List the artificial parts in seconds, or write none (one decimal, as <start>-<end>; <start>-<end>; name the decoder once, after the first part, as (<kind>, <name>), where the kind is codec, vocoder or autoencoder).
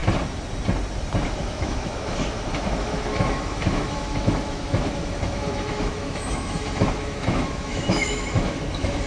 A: 1.3-9.1 (autoencoder, DAC-VAE)